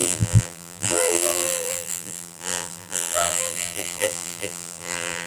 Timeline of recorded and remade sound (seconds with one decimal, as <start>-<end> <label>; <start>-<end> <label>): 0.0-5.3 remade